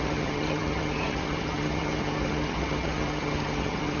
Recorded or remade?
remade